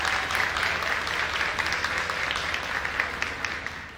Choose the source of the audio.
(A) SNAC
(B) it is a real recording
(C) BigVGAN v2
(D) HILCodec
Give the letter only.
B